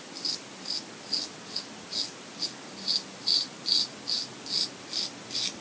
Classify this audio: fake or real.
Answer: real